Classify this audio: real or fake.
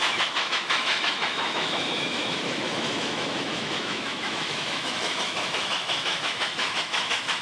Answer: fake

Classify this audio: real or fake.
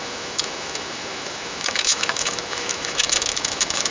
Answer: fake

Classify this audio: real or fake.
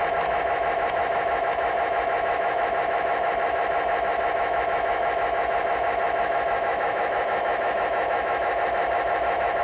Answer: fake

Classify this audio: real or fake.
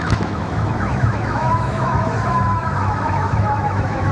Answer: fake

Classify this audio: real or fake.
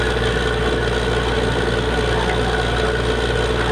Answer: real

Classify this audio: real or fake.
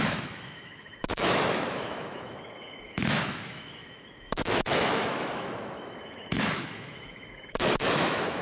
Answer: fake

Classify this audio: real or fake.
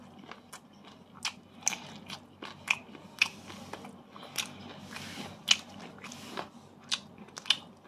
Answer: real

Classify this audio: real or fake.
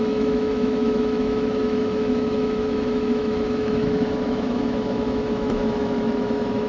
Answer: fake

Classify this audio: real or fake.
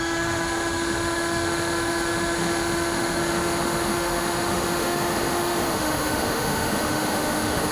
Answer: fake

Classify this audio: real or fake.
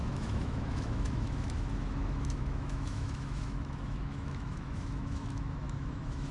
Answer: fake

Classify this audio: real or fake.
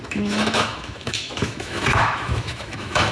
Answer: fake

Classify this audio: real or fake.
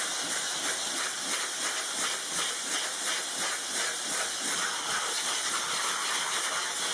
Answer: real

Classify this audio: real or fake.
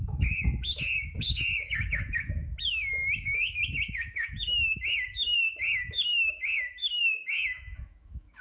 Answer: fake